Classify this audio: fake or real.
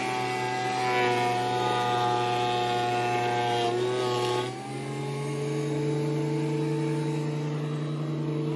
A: real